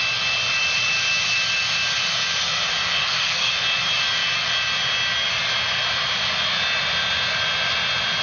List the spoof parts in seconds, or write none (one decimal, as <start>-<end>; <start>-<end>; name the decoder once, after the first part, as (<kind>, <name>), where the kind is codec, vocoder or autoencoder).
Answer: 3.0-3.5 (codec, SNAC)